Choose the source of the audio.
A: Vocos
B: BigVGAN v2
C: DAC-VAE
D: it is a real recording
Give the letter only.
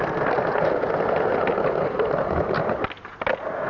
D